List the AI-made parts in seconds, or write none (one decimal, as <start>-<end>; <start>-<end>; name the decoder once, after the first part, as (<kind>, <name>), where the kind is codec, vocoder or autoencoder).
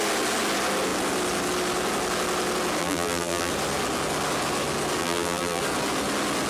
2.8-3.5 (vocoder, BigVGAN v2); 5.0-5.6